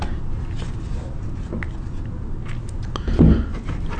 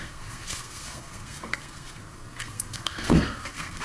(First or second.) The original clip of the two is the first